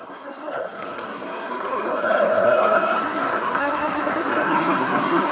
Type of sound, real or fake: fake